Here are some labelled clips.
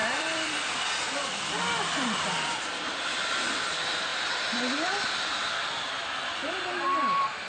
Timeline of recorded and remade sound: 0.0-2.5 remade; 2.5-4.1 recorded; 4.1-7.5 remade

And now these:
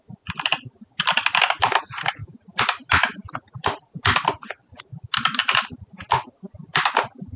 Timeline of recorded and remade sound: 0.0-5.4 recorded; 5.4-5.9 remade; 5.9-7.4 recorded

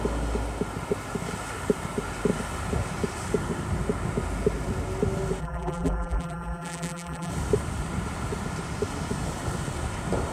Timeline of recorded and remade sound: 0.0-5.4 recorded; 5.4-7.3 remade; 7.3-10.3 recorded

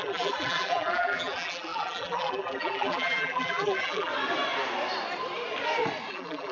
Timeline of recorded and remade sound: 0.0-4.1 remade; 4.1-6.1 recorded; 6.1-6.5 remade

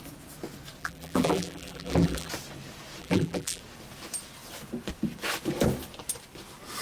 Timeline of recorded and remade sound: 0.0-0.8 recorded; 0.8-2.3 remade; 2.3-3.0 recorded; 3.0-3.6 remade; 3.6-6.8 recorded